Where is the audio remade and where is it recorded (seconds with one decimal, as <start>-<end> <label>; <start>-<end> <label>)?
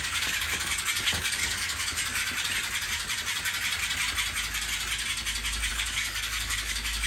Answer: 0.0-2.2 remade; 2.2-5.7 recorded; 5.7-7.1 remade